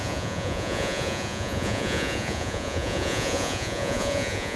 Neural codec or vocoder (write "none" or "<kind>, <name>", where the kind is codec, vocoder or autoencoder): vocoder, Vocos